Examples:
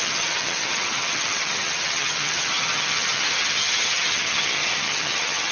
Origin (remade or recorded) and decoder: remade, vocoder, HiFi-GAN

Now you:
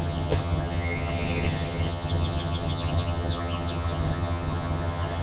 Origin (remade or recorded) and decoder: remade, vocoder, HiFi-GAN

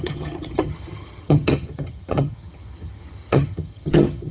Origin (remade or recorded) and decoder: remade, vocoder, HiFi-GAN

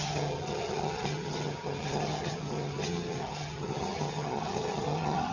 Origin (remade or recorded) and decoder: remade, vocoder, HiFi-GAN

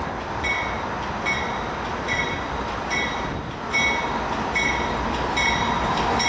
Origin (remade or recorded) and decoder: recorded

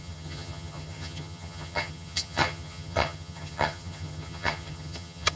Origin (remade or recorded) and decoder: remade, vocoder, HiFi-GAN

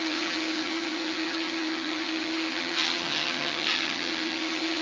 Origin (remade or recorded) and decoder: remade, vocoder, HiFi-GAN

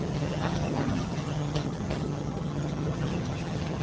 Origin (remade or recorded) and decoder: remade, vocoder, HiFi-GAN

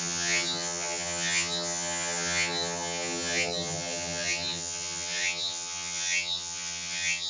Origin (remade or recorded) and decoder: remade, vocoder, HiFi-GAN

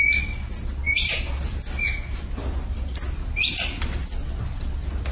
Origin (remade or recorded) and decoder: recorded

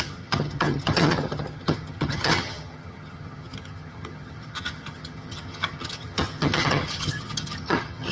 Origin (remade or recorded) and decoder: remade, vocoder, HiFi-GAN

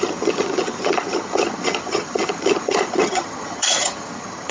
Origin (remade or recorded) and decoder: remade, vocoder, HiFi-GAN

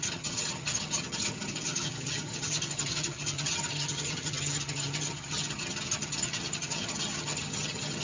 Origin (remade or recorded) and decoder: remade, vocoder, HiFi-GAN